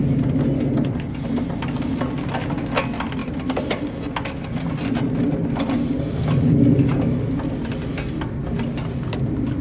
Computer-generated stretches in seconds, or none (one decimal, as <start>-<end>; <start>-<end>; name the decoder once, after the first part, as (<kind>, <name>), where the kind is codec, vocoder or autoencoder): none